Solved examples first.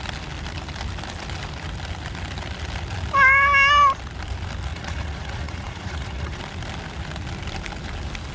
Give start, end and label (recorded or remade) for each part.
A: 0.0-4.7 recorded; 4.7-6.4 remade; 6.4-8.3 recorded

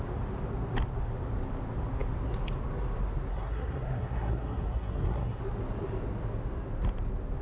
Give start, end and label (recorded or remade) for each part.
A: 0.0-3.3 recorded; 3.3-5.4 remade; 5.4-7.4 recorded